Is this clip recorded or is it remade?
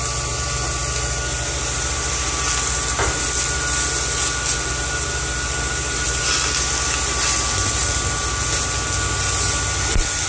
recorded